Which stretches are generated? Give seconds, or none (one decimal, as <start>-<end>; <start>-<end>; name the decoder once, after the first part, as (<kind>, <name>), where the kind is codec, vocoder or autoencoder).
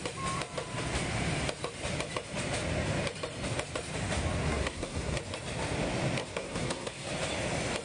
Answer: 4.5-5.2 (codec, SNAC); 6.2-7.1